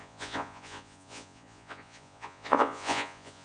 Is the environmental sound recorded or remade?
remade